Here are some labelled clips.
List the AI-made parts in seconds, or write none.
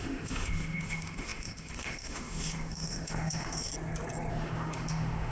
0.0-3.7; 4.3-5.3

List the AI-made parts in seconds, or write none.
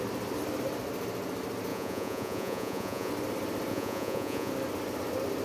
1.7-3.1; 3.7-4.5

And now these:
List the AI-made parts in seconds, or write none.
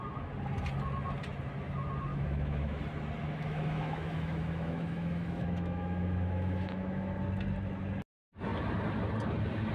2.1-2.8; 3.2-7.1